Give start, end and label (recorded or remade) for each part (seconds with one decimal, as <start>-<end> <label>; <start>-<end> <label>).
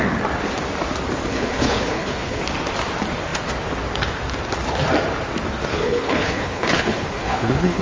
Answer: 0.0-1.3 recorded; 1.3-2.4 remade; 2.4-5.7 recorded; 5.7-7.8 remade